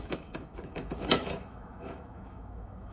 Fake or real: fake